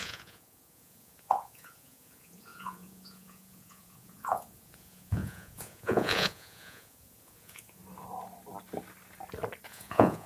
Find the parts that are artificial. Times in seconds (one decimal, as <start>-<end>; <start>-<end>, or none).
0.0-7.8; 9.7-10.3